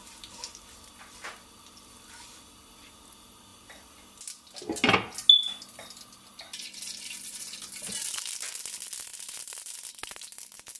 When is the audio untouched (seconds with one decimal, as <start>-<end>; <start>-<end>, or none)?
0.0-10.8